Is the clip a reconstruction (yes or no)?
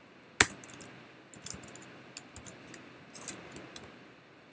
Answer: no